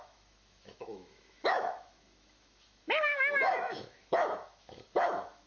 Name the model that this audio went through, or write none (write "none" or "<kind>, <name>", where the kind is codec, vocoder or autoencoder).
autoencoder, DAC-VAE